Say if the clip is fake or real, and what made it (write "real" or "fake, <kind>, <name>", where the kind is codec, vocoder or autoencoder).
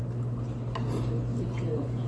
real